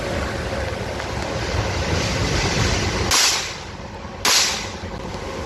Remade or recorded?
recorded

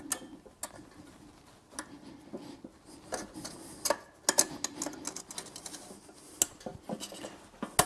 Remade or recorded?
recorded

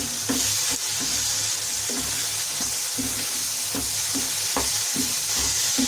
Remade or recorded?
recorded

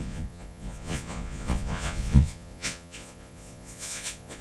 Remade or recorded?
remade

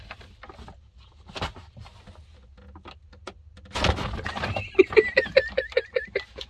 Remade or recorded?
recorded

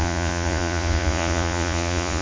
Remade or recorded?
remade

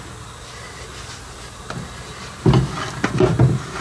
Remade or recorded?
recorded